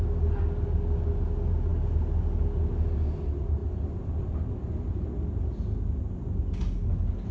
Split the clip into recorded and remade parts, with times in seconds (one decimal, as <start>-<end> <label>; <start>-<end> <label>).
0.0-7.3 recorded